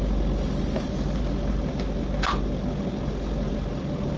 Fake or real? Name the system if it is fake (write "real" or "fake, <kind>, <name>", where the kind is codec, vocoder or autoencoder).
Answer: real